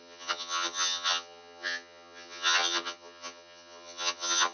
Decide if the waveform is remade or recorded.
remade